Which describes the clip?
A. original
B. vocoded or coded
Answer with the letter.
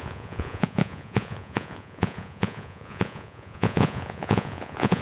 B